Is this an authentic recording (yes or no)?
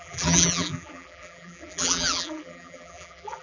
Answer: no